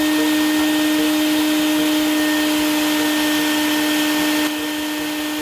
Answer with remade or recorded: recorded